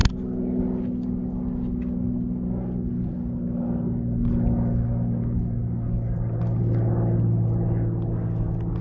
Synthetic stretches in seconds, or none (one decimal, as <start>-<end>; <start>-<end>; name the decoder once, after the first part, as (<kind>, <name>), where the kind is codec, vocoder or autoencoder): none